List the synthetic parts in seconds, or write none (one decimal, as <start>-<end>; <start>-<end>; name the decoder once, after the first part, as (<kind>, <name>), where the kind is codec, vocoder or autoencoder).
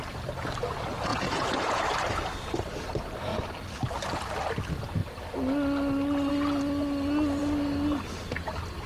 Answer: 1.1-1.9 (vocoder, Vocos)